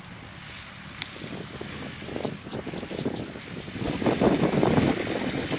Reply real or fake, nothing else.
real